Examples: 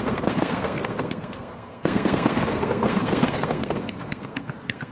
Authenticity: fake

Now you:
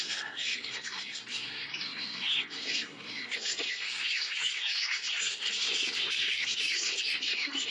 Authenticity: fake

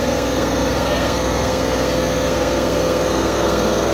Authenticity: fake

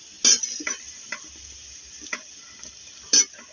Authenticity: real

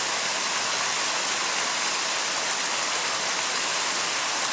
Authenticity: real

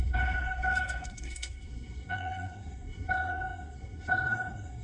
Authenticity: fake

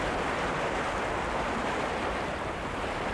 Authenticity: real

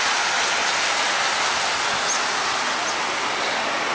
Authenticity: real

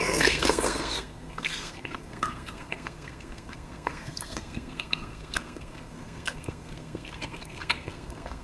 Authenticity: fake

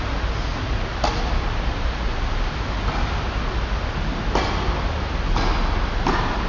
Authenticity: real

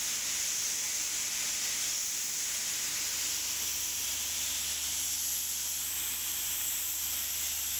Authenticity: real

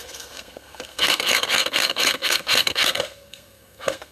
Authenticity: fake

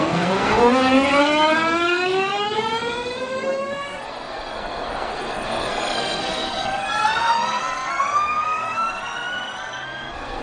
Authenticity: fake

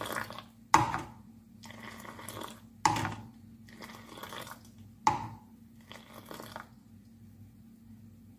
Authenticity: real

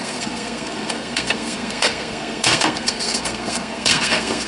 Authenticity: fake